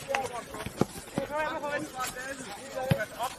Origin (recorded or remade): recorded